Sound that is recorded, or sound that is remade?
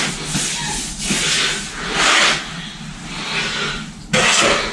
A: recorded